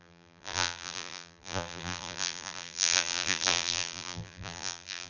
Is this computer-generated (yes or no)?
yes